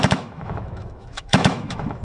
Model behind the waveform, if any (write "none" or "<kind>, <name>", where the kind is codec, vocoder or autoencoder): autoencoder, DAC-VAE